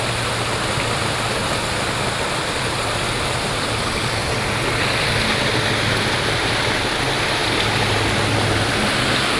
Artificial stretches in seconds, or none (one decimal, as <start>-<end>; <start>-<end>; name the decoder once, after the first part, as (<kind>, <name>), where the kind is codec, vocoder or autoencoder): none